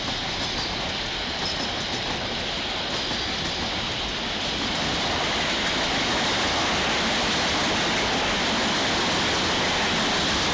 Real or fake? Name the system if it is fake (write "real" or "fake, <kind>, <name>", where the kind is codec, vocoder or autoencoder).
real